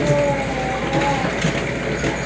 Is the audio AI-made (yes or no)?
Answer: no